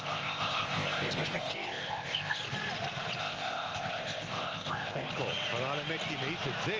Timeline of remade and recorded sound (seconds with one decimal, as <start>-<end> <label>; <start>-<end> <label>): 0.0-2.4 remade; 2.4-3.2 recorded; 3.2-5.1 remade; 5.1-6.8 recorded